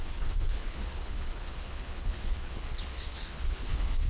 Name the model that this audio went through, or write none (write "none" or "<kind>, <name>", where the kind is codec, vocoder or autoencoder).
codec, HILCodec